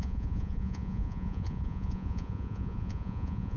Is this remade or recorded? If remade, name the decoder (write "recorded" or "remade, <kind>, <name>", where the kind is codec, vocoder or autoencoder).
remade, vocoder, Vocos